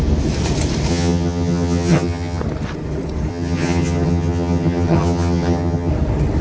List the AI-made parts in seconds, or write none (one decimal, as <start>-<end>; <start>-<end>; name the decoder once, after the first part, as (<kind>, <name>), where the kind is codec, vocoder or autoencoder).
0.9-2.4 (vocoder, HiFi-GAN); 3.3-5.9